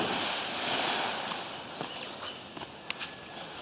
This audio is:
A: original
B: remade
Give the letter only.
A